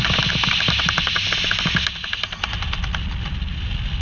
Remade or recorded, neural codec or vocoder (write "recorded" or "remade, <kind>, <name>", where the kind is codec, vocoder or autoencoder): recorded